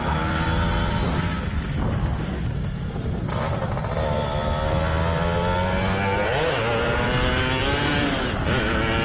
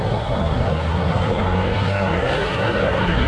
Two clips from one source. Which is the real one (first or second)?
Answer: first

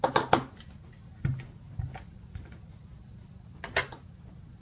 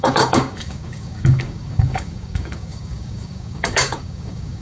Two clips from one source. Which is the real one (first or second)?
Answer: first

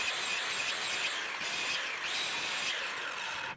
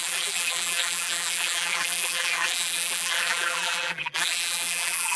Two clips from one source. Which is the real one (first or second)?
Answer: first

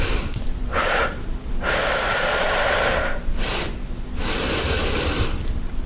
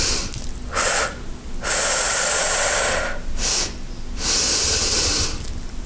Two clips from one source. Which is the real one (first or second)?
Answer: second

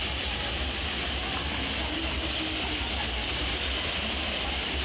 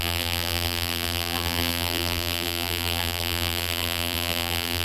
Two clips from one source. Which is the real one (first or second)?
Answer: first